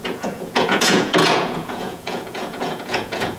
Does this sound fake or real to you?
fake